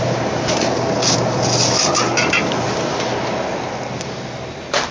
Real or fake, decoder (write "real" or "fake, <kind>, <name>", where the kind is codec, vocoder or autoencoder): real